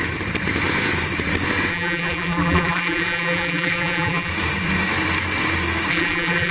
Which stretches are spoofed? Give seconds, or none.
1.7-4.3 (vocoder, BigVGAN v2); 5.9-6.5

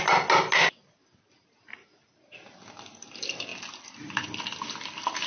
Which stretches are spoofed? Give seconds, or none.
none

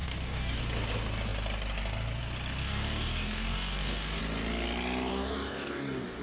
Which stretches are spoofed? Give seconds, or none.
0.0-0.6 (codec, DAC); 2.6-4.2; 5.1-6.2

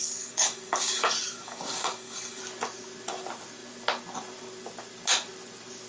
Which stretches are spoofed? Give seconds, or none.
0.0-2.4 (codec, DAC)